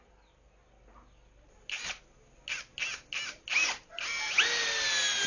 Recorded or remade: recorded